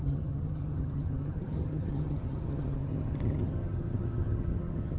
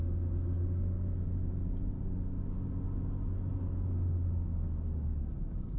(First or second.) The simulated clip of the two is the first